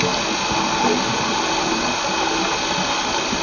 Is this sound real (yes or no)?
yes